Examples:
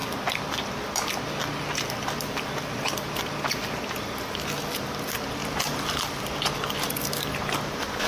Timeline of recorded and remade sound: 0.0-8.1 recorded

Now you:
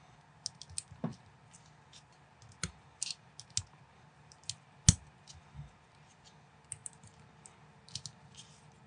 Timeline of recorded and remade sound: 0.0-8.9 recorded

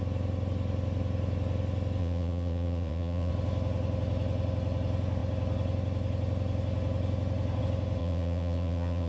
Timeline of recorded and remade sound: 0.0-2.0 recorded; 2.0-3.3 remade; 3.3-8.0 recorded; 8.0-9.1 remade

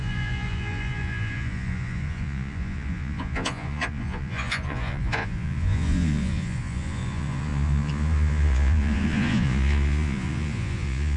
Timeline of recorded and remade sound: 0.0-11.2 remade

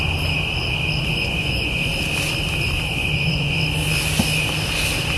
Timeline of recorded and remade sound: 0.0-1.1 recorded; 1.1-1.9 remade; 1.9-3.0 recorded; 3.0-3.6 remade; 3.6-5.2 recorded